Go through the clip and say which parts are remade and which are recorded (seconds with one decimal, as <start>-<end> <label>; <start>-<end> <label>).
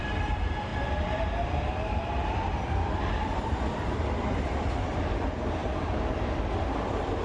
0.0-0.7 recorded; 0.7-5.0 remade; 5.0-7.2 recorded